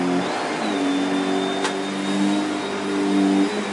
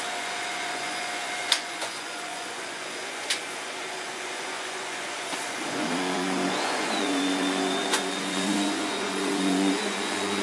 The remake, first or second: second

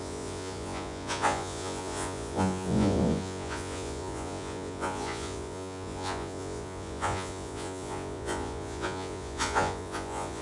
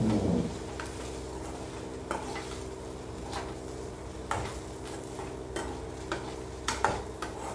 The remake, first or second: first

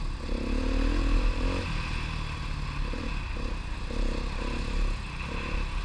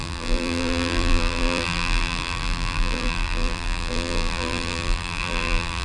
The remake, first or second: second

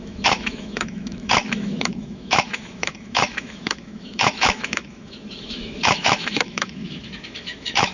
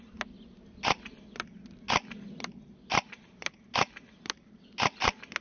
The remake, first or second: first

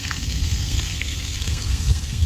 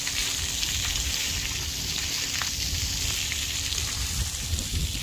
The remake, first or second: first